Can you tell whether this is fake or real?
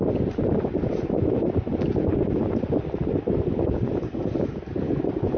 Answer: real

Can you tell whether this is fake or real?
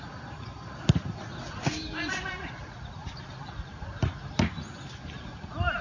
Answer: real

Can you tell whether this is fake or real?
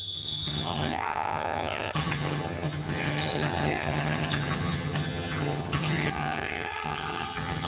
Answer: fake